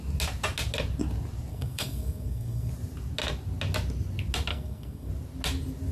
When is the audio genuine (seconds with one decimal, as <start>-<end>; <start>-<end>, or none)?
0.0-1.5; 2.7-4.5; 5.1-5.9